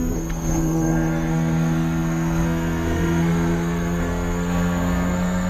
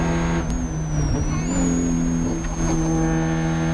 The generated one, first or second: first